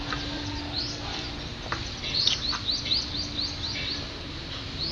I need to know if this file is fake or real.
real